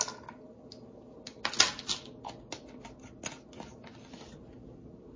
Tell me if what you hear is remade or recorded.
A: recorded